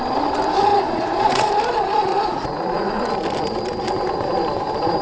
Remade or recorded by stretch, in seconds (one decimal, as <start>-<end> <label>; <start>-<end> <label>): 0.0-0.7 recorded; 0.7-1.5 remade; 1.5-2.1 recorded; 2.1-3.0 remade; 3.0-5.0 recorded